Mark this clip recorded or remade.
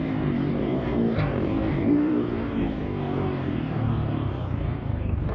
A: remade